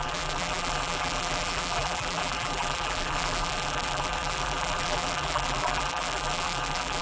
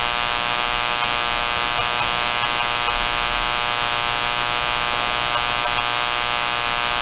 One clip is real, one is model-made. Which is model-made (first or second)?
first